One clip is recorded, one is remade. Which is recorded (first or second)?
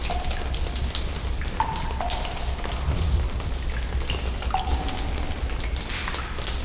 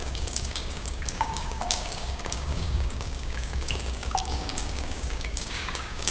first